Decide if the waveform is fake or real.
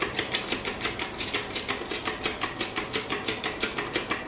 real